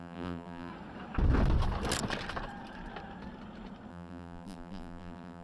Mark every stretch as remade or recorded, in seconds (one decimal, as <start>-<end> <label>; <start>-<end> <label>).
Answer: 0.0-0.7 remade; 0.7-3.9 recorded; 3.9-5.4 remade

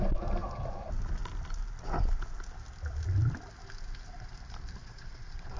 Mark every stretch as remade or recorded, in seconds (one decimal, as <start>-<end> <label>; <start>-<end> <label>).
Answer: 0.0-4.8 recorded; 4.8-5.6 remade

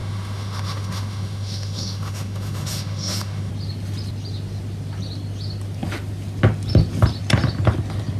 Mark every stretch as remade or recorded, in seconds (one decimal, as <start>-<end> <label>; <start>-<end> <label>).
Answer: 0.0-3.5 remade; 3.5-8.2 recorded